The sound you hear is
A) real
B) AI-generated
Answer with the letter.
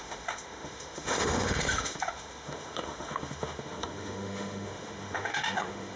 B